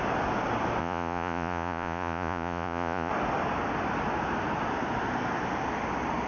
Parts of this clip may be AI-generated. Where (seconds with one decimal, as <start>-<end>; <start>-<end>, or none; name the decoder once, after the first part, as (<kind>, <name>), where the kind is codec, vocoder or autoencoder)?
0.8-3.1 (vocoder, Vocos)